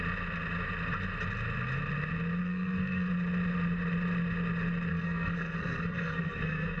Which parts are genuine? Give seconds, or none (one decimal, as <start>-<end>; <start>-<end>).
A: 0.0-2.4; 3.1-4.9